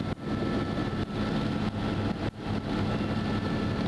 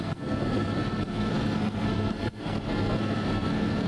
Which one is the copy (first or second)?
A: second